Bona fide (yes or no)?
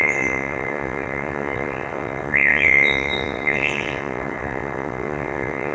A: no